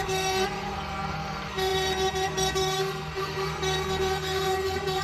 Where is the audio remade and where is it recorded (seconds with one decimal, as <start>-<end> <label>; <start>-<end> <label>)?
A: 0.0-5.0 remade